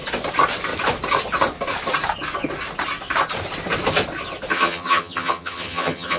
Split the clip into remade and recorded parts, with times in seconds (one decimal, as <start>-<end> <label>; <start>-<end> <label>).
0.0-4.5 recorded; 4.5-6.2 remade

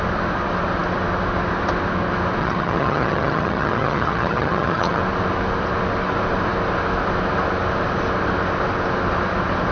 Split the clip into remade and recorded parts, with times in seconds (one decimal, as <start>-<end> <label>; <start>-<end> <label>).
0.0-2.4 recorded; 2.4-5.0 remade; 5.0-9.7 recorded

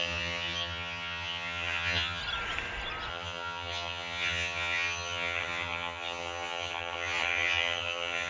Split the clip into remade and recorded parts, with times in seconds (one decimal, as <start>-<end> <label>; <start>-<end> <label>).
0.0-2.2 remade; 2.2-3.1 recorded; 3.1-8.3 remade